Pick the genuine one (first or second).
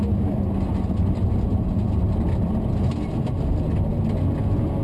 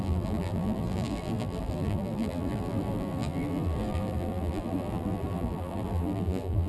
first